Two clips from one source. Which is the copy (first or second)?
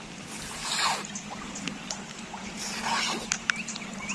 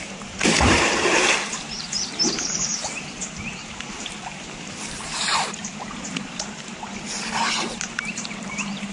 second